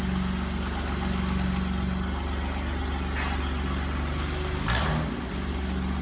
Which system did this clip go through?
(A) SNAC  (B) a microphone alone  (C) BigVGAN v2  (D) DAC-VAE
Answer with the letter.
B